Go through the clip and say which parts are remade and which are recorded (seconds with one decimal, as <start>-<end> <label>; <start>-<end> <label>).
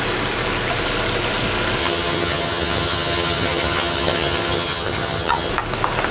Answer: 0.0-1.8 recorded; 1.8-5.5 remade; 5.5-6.1 recorded